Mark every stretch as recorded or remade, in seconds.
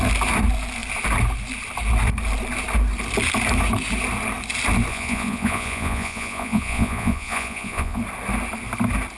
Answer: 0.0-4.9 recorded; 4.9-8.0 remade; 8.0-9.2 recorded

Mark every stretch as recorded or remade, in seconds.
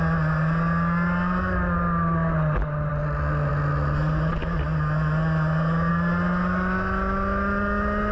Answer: 0.0-8.1 recorded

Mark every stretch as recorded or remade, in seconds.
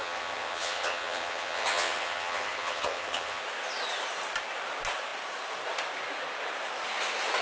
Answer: 0.0-3.4 remade; 3.4-7.4 recorded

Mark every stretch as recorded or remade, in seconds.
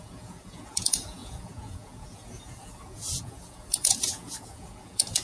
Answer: 0.0-5.2 remade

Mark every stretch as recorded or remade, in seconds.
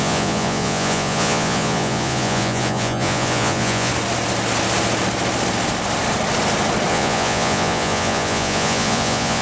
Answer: 0.0-3.9 remade; 3.9-6.9 recorded; 6.9-9.4 remade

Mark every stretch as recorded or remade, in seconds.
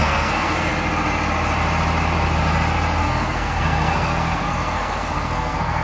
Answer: 0.0-0.7 remade; 0.7-3.0 recorded; 3.0-5.8 remade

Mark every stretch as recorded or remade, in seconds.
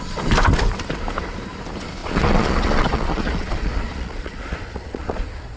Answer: 0.0-2.0 recorded; 2.0-5.6 remade